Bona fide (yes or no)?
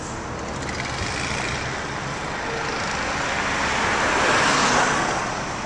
yes